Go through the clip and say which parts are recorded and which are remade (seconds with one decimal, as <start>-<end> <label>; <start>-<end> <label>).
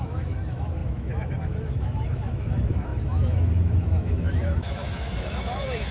0.0-5.9 remade